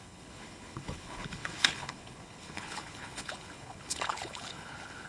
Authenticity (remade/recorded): remade